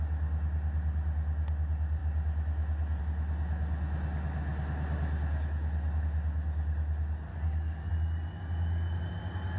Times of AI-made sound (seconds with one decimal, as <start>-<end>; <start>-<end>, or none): 7.3-7.9